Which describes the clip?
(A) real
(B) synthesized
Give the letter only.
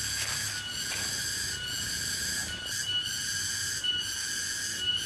A